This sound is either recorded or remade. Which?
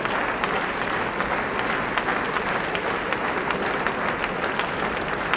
recorded